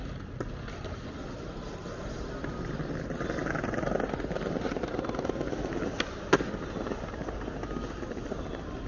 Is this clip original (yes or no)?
yes